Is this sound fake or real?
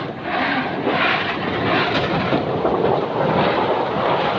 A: real